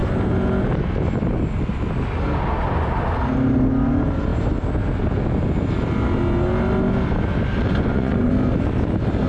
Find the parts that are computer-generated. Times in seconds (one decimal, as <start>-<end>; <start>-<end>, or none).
7.7-8.3